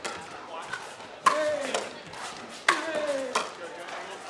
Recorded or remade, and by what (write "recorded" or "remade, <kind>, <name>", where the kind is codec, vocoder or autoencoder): recorded